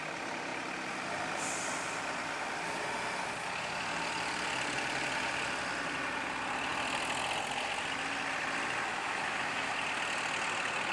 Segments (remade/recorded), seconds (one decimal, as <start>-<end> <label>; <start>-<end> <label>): 0.0-8.9 recorded; 8.9-9.7 remade; 9.7-10.9 recorded